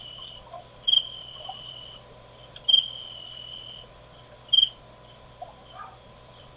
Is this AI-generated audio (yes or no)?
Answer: yes